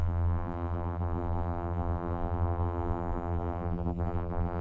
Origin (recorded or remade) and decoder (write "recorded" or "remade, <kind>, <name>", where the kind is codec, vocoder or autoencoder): remade, vocoder, BigVGAN v2